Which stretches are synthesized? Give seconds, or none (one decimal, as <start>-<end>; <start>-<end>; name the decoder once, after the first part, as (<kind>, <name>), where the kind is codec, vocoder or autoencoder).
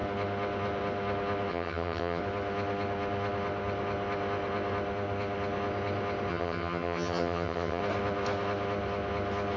1.5-2.2 (vocoder, HiFi-GAN); 6.3-7.8